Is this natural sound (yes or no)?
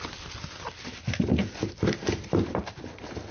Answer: yes